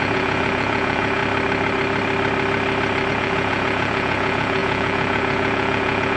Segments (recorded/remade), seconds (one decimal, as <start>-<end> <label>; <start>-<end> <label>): 0.0-1.2 remade; 1.2-3.1 recorded; 3.1-6.2 remade